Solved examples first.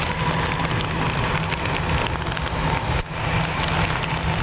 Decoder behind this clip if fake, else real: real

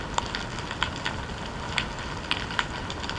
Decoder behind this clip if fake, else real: real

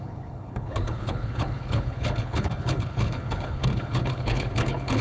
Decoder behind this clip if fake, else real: fake, codec, HILCodec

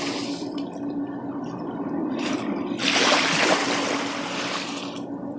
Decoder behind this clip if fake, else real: real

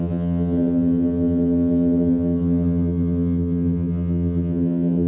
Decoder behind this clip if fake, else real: fake, vocoder, HiFi-GAN